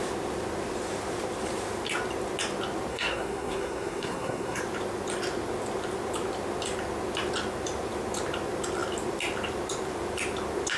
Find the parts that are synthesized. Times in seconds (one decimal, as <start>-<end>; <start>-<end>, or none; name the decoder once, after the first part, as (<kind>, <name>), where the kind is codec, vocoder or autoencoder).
2.9-4.6 (codec, SNAC)